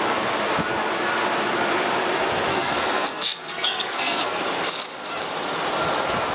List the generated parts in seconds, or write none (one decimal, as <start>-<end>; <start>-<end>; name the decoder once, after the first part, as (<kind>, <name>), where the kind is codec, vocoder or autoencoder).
2.5-4.4 (codec, SNAC)